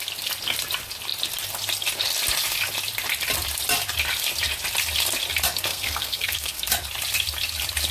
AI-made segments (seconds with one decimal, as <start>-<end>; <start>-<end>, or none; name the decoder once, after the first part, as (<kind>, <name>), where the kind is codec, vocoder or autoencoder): 5.7-6.6 (codec, SNAC)